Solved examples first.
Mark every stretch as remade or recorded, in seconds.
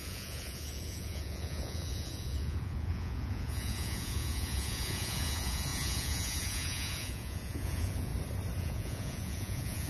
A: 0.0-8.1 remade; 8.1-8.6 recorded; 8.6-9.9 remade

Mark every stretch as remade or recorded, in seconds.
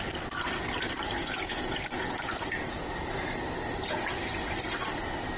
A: 0.0-1.2 recorded; 1.2-2.9 remade; 2.9-5.4 recorded